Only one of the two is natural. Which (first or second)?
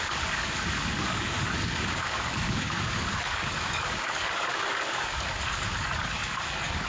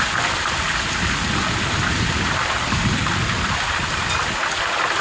second